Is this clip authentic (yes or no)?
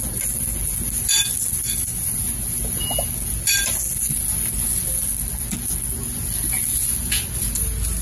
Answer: yes